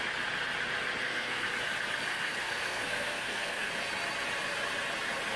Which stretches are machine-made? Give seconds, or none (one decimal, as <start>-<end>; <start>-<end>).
1.0-1.5; 2.1-3.7